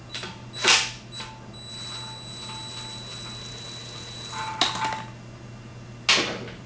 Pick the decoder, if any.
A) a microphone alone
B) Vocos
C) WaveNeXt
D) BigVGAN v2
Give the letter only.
A